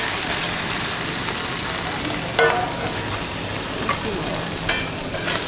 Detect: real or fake real